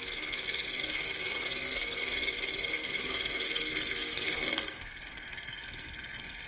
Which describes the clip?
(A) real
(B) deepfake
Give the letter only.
B